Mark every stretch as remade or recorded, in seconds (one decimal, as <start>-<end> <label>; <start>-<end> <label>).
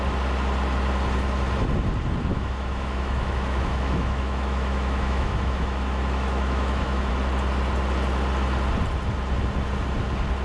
0.0-2.3 recorded; 2.3-7.1 remade; 7.1-10.4 recorded